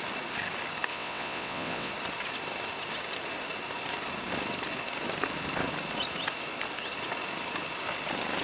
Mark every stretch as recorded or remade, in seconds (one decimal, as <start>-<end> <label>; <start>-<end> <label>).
0.0-0.9 recorded; 0.9-1.9 remade; 1.9-8.4 recorded